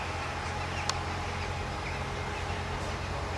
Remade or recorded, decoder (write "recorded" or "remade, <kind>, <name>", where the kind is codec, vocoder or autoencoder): recorded